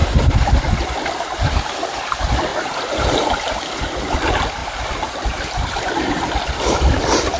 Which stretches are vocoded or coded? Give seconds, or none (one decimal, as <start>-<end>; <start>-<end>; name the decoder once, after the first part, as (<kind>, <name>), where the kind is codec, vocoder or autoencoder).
0.0-1.2 (vocoder, BigVGAN v2); 4.6-7.4